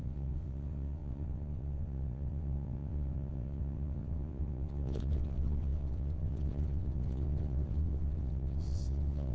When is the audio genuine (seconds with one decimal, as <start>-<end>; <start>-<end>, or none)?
none